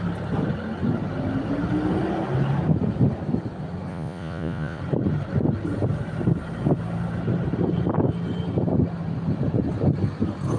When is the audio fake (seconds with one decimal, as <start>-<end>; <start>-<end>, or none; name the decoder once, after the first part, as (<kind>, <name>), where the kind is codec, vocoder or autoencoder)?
3.9-4.8 (vocoder, Vocos)